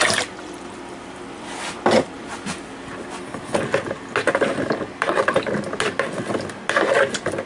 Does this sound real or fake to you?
real